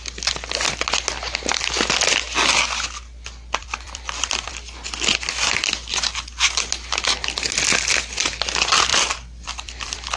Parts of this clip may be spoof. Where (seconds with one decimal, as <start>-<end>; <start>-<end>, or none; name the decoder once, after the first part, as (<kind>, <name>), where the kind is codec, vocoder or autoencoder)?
3.6-4.5 (vocoder, BigVGAN v2); 8.9-10.2